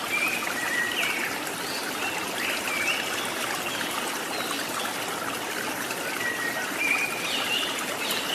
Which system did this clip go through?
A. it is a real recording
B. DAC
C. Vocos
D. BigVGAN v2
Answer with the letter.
A